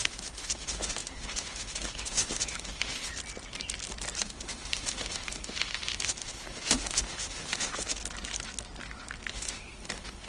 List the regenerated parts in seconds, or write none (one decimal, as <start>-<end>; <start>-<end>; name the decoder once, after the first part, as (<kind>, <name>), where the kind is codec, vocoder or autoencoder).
0.0-3.1 (autoencoder, DAC-VAE); 4.2-8.0; 9.3-10.3